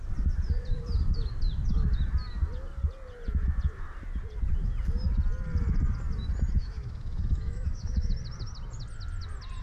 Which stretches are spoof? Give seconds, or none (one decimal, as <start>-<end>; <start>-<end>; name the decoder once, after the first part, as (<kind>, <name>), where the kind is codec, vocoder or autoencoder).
6.6-8.1 (autoencoder, DAC-VAE)